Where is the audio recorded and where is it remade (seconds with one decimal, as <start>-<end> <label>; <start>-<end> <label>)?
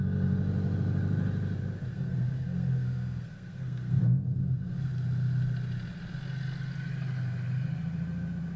0.0-1.9 recorded; 1.9-4.9 remade; 4.9-8.6 recorded